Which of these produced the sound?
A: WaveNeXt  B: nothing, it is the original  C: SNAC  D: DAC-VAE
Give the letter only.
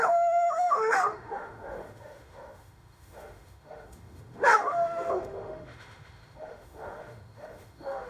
D